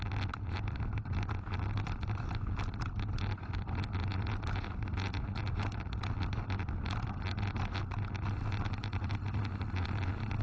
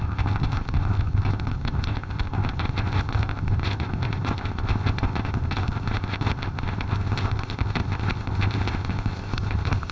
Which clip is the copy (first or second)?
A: second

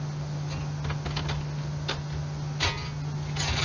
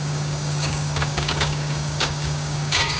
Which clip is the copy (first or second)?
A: second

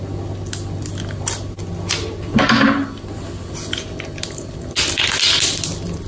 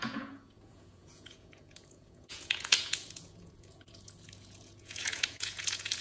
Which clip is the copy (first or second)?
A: second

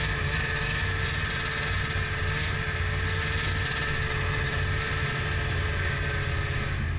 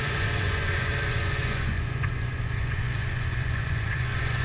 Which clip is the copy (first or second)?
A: second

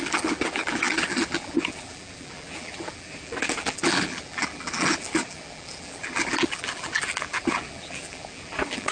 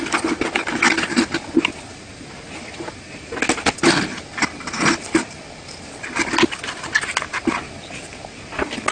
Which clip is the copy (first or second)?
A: first